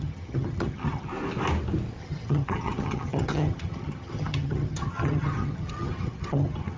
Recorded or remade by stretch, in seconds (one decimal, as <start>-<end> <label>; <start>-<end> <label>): 0.0-1.1 remade; 1.1-2.0 recorded; 2.0-6.8 remade